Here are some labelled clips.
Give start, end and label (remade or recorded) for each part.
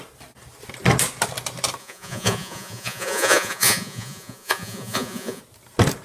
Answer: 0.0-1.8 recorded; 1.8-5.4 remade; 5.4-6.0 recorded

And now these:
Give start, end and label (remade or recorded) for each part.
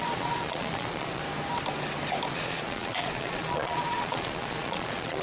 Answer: 0.0-1.2 remade; 1.2-2.3 recorded; 2.3-5.2 remade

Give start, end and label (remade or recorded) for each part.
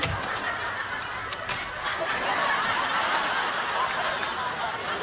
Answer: 0.0-5.0 recorded